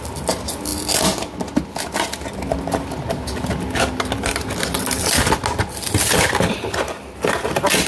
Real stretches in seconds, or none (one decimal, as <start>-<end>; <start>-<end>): 0.0-7.9